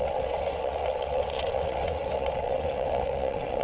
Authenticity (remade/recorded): remade